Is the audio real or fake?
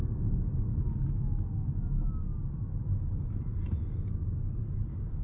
real